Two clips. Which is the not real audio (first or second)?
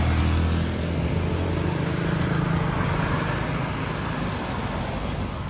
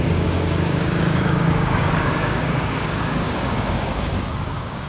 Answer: second